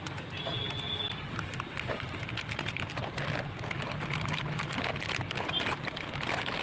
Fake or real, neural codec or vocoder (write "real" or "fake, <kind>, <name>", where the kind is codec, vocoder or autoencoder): real